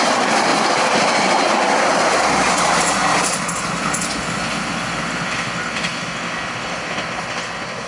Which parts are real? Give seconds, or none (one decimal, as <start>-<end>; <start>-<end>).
0.0-7.9